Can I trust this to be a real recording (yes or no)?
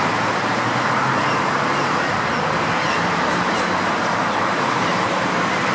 no